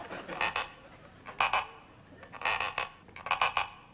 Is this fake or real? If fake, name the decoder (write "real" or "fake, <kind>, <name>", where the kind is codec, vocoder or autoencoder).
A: real